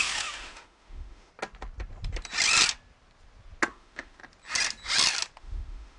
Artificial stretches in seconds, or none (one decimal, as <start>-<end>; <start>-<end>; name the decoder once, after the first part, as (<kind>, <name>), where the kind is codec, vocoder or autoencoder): 0.0-1.3 (autoencoder, DAC-VAE); 3.7-4.2; 5.4-6.0